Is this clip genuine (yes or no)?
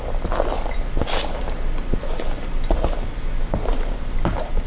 yes